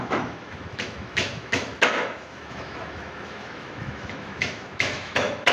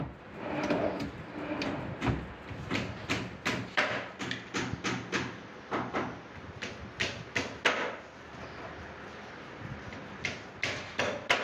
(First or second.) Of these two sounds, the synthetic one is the first